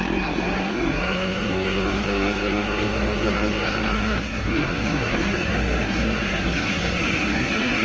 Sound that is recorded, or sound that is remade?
remade